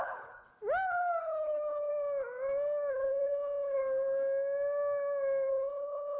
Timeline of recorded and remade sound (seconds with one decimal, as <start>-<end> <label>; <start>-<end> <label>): 0.0-0.5 remade; 0.5-1.2 recorded; 1.2-1.9 remade; 1.9-2.9 recorded; 2.9-3.8 remade; 3.8-5.5 recorded; 5.5-6.2 remade

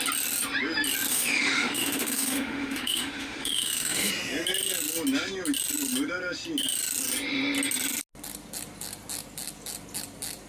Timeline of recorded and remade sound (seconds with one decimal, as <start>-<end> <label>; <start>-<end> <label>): 0.0-1.1 recorded; 1.1-4.1 remade; 4.1-10.5 recorded

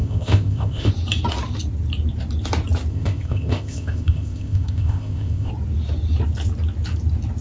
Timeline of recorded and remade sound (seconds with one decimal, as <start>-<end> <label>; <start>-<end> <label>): 0.0-0.9 remade; 0.9-2.9 recorded; 2.9-5.5 remade; 5.5-7.4 recorded

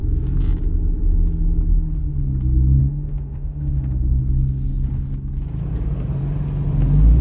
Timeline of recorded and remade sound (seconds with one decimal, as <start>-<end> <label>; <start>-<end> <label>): 0.0-2.8 recorded; 2.8-4.2 remade; 4.2-7.2 recorded

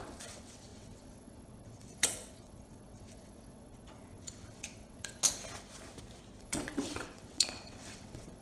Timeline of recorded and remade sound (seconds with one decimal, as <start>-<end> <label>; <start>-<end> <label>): 0.0-5.2 remade; 5.2-6.4 recorded; 6.4-8.4 remade

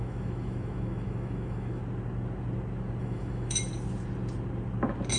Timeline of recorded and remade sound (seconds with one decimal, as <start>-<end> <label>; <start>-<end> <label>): 0.0-1.8 remade; 1.8-3.0 recorded; 3.0-3.7 remade; 3.7-5.2 recorded